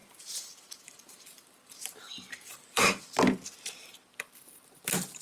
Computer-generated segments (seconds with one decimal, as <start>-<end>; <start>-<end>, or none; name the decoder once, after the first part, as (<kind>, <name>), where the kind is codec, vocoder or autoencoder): 0.0-3.1 (vocoder, BigVGAN v2)